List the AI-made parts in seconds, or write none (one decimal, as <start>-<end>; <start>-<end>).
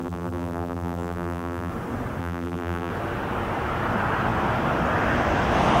0.0-1.7; 2.2-2.9